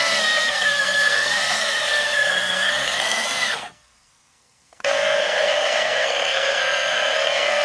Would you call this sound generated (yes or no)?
yes